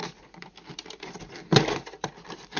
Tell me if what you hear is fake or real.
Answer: fake